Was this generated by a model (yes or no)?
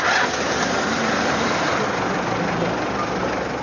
no